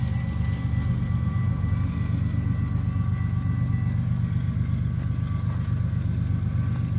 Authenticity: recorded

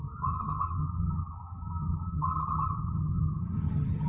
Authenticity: remade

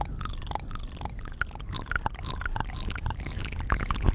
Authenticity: recorded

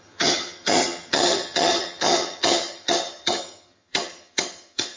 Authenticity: remade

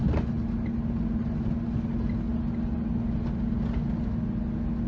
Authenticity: recorded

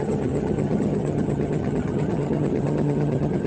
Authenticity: remade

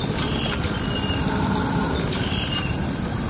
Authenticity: recorded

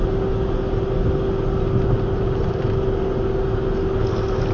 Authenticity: recorded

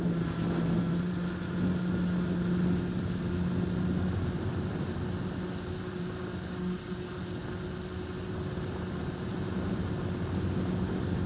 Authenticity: recorded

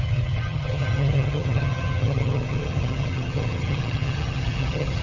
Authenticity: remade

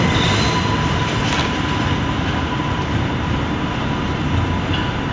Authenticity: recorded